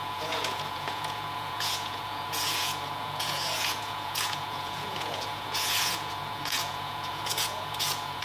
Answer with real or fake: fake